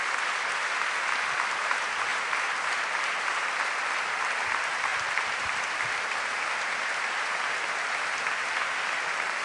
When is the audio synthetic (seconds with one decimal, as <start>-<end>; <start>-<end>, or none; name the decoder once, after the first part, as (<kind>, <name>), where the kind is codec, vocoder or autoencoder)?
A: 2.1-4.3 (vocoder, BigVGAN v2); 4.9-7.6